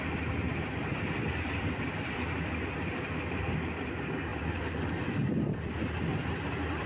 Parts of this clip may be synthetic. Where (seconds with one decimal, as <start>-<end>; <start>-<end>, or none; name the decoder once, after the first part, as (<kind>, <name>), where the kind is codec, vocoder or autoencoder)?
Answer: 0.5-6.9 (vocoder, BigVGAN v2)